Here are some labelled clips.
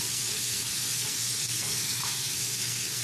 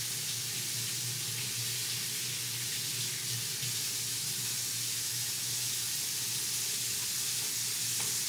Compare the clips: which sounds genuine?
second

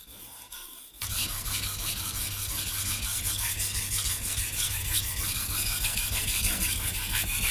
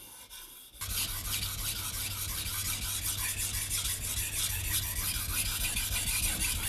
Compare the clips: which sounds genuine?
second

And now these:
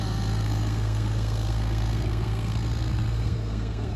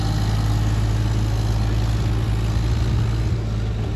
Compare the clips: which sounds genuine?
second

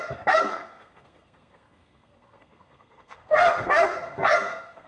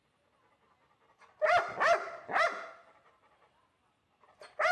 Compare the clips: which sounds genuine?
second